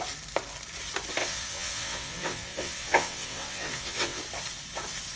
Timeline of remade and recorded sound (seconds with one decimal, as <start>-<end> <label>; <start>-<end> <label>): 0.0-1.2 recorded; 1.2-4.2 remade; 4.2-5.2 recorded